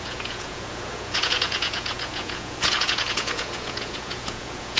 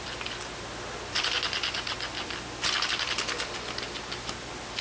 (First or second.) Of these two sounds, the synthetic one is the first